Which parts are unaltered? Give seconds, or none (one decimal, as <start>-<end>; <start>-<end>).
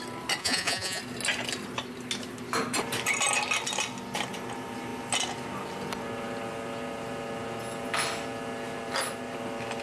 0.0-0.4; 1.0-9.8